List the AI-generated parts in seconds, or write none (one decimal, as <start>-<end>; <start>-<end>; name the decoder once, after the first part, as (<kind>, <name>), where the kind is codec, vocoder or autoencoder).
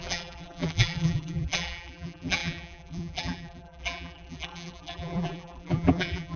0.0-6.4 (vocoder, BigVGAN v2)